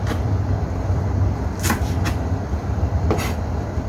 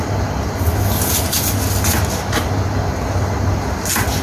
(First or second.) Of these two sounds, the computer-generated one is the first